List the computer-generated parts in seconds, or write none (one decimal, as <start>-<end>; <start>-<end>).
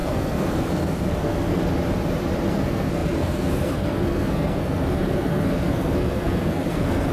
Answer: 0.0-1.6; 2.5-7.1